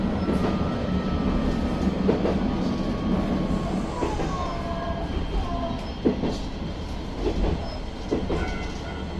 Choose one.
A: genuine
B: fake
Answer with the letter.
A